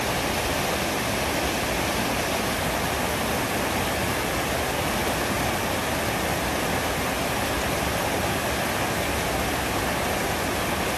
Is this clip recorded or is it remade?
recorded